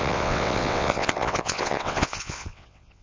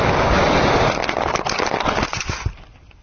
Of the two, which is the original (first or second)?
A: second